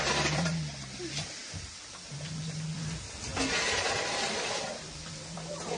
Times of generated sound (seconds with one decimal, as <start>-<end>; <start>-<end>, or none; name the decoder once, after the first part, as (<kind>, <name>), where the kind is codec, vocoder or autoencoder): 0.0-3.3 (vocoder, BigVGAN v2); 4.1-5.8